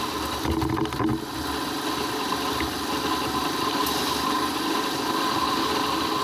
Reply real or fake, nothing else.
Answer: real